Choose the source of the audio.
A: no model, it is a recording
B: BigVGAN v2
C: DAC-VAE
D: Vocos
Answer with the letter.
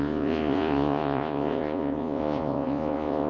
D